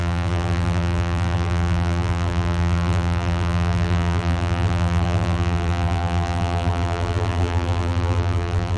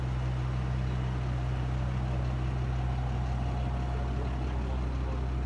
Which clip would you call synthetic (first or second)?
first